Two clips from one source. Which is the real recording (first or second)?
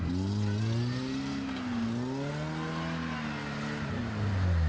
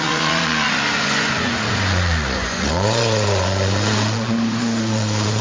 first